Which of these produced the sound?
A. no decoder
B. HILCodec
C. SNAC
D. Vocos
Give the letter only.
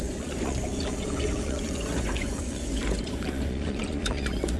D